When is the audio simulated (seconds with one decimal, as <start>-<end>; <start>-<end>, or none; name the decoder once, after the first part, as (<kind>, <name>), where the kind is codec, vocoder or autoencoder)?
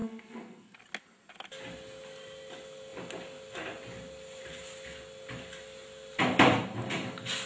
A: 0.0-0.8 (codec, SNAC)